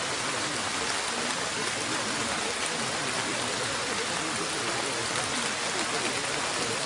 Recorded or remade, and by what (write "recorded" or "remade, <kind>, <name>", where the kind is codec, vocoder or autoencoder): recorded